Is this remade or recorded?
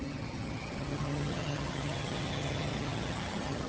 remade